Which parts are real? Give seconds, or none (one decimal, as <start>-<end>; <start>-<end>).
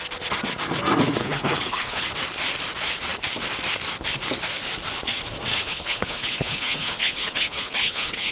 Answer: 0.0-1.2; 2.1-5.5